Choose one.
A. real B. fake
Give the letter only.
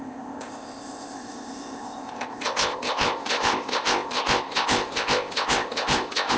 B